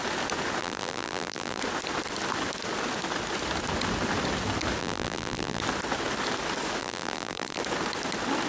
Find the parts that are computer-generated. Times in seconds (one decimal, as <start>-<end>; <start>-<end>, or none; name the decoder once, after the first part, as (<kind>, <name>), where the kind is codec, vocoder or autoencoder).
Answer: 0.6-1.6 (vocoder, BigVGAN v2); 4.8-5.6; 6.8-7.6